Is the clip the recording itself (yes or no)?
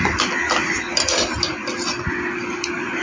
yes